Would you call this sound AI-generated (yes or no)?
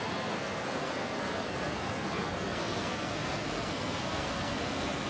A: yes